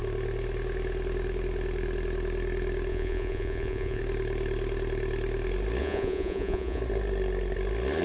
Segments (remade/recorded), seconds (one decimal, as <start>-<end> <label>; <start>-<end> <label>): 0.0-2.9 recorded; 2.9-4.0 remade; 4.0-5.8 recorded; 5.8-6.8 remade; 6.8-8.0 recorded